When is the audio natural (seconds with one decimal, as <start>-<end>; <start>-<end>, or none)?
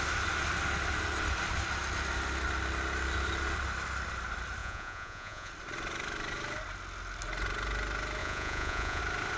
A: 0.0-4.6; 5.5-8.2; 9.0-9.4